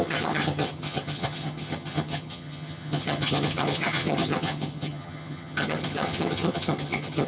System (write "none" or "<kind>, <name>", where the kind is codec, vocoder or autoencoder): vocoder, HiFi-GAN